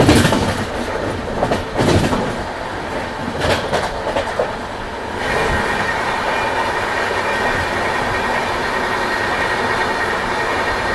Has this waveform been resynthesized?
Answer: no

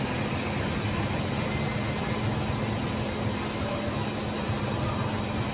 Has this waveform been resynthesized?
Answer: no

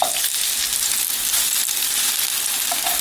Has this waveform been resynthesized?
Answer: no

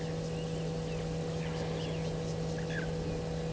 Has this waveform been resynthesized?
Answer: no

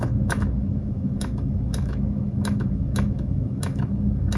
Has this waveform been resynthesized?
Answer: yes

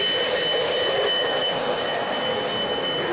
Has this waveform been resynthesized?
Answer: no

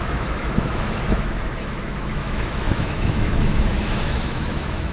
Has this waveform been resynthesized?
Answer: yes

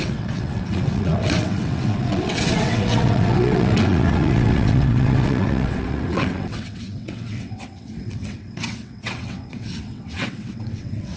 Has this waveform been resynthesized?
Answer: yes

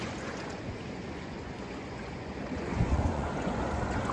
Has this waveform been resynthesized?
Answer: yes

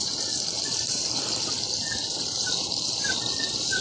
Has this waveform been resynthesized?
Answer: no